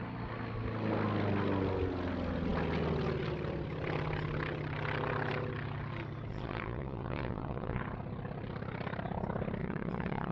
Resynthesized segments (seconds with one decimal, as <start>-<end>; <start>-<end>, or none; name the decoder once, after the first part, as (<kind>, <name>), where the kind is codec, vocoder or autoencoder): 6.3-7.8 (vocoder, Vocos); 9.6-10.3